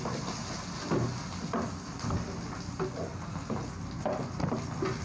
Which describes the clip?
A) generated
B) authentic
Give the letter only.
B